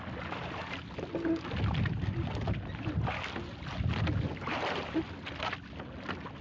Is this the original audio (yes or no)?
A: yes